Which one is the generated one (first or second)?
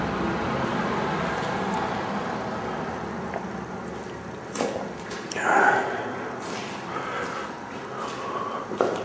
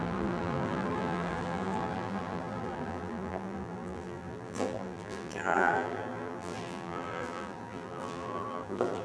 second